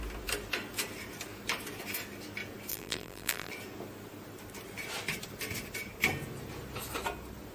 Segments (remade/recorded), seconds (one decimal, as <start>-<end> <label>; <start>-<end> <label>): 0.0-2.7 recorded; 2.7-3.5 remade; 3.5-7.5 recorded